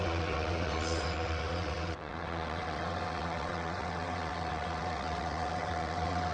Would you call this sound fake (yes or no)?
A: yes